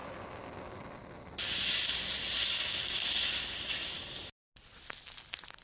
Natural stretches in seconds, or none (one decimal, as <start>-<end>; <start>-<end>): 0.0-5.6